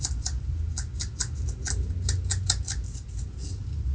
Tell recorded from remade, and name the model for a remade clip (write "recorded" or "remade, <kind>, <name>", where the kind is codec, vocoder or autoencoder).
recorded